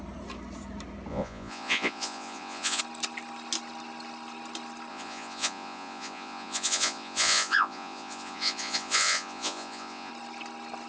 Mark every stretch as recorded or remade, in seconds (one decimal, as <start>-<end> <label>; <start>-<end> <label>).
0.0-1.1 recorded; 1.1-2.8 remade; 2.8-4.9 recorded; 4.9-10.1 remade; 10.1-10.9 recorded